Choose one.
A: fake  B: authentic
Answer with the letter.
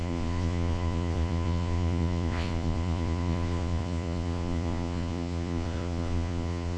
A